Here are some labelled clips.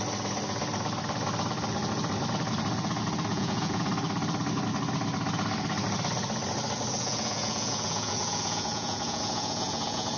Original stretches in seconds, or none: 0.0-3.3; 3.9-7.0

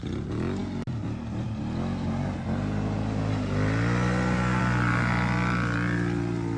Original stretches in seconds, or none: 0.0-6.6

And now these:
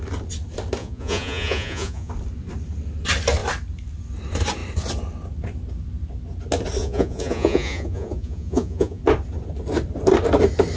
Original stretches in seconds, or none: 0.0-0.8; 2.1-6.8; 9.0-10.8

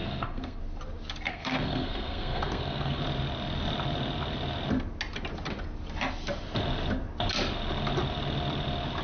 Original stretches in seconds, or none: 0.6-1.3; 3.0-9.0

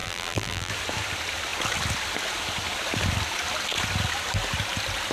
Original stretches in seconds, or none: 0.7-5.1

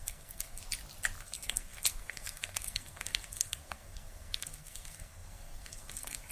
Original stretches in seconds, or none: 0.6-1.2